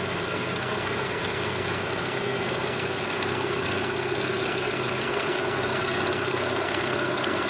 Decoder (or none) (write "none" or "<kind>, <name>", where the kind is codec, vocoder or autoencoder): codec, SNAC